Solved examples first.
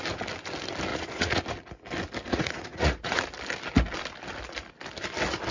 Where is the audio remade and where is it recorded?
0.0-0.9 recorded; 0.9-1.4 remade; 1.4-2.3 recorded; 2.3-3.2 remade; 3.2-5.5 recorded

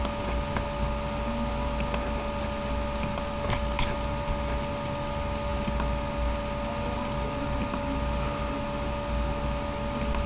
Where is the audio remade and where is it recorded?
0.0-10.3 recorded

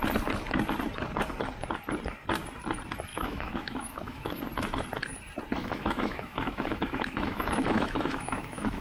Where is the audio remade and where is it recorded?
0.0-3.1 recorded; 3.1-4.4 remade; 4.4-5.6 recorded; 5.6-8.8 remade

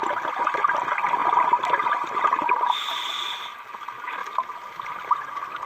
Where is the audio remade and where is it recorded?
0.0-4.2 recorded; 4.2-5.1 remade; 5.1-5.7 recorded

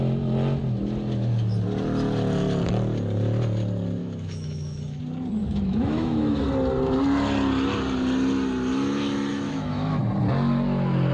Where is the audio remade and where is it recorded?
0.0-4.0 recorded; 4.0-5.0 remade; 5.0-5.4 recorded; 5.4-6.4 remade; 6.4-9.3 recorded; 9.3-10.0 remade; 10.0-11.1 recorded